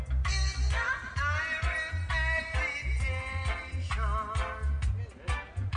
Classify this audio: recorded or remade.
recorded